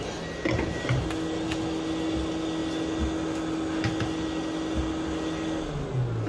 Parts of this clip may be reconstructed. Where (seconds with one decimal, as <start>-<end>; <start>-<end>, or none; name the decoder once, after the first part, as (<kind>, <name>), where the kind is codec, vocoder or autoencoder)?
none

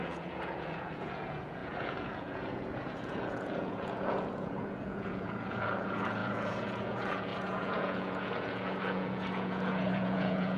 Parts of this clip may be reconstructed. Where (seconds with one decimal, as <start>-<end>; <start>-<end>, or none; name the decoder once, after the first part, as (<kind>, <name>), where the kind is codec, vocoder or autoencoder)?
0.0-10.6 (vocoder, Vocos)

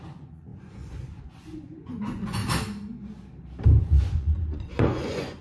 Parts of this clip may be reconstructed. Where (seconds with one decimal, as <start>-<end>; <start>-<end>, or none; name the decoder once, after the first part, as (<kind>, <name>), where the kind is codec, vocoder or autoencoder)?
0.0-2.4 (vocoder, Vocos); 3.8-5.4

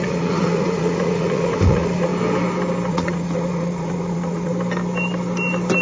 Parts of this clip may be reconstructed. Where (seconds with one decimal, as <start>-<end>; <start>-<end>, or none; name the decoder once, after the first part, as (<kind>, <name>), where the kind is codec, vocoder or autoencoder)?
0.0-2.1 (vocoder, Vocos); 2.9-4.5

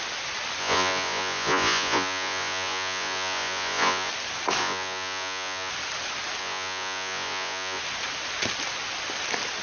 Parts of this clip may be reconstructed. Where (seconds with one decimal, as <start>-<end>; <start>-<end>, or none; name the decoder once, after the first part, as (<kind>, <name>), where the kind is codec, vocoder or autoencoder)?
0.6-4.1 (vocoder, Vocos); 4.6-5.7; 6.4-7.8

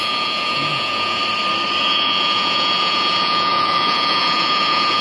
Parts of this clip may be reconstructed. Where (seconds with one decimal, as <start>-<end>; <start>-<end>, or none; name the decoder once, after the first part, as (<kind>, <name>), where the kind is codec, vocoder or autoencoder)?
0.0-1.2 (vocoder, Vocos); 1.8-5.0

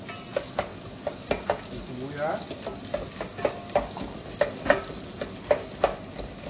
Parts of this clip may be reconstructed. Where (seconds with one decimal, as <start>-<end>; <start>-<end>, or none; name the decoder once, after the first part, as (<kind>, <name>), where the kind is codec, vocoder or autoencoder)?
none